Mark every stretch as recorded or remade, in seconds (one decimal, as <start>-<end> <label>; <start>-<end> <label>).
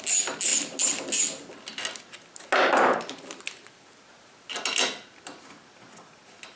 0.0-6.6 recorded